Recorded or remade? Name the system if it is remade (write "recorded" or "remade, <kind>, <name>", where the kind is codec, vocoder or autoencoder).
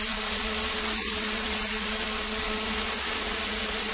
remade, vocoder, Vocos